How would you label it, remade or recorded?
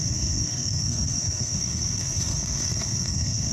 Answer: remade